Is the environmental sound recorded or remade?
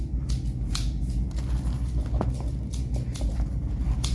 recorded